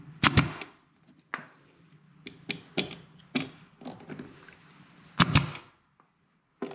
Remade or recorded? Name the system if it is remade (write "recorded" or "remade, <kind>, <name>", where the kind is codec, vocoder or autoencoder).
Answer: recorded